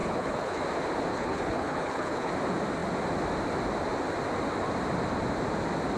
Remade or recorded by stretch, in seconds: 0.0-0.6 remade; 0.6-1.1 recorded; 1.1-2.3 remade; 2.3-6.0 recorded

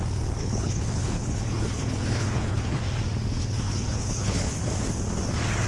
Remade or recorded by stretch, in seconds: 0.0-0.4 recorded; 0.4-2.8 remade; 2.8-3.4 recorded; 3.4-4.6 remade; 4.6-5.7 recorded

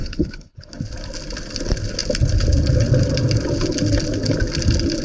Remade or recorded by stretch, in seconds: 0.0-0.8 remade; 0.8-5.0 recorded

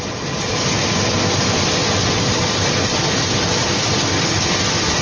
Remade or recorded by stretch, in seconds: 0.0-5.0 recorded